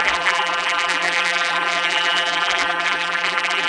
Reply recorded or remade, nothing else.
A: remade